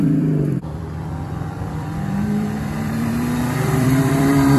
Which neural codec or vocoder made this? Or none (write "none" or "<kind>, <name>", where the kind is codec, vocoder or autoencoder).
vocoder, BigVGAN v2